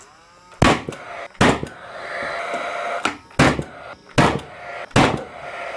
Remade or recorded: recorded